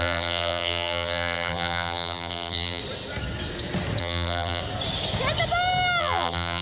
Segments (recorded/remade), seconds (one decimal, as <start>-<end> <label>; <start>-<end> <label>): 0.0-2.8 remade; 2.8-4.0 recorded; 4.0-4.6 remade; 4.6-6.0 recorded; 6.0-6.6 remade